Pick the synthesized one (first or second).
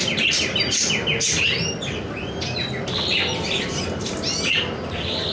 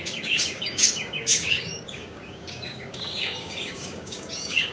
second